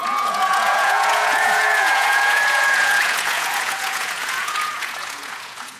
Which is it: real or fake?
fake